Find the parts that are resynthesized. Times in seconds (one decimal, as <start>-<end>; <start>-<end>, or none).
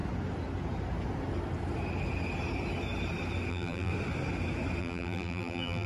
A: 3.5-3.9; 4.8-5.9